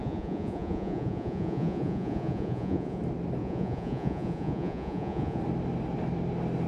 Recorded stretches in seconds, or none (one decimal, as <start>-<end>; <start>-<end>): 3.0-3.4; 5.4-6.7